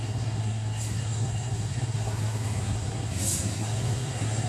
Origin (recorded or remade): remade